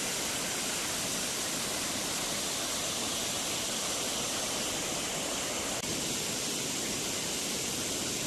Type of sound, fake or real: real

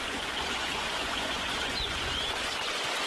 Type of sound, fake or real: fake